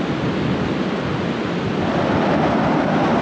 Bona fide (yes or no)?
yes